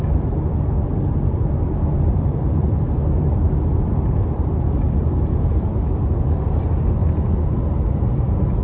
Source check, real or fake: real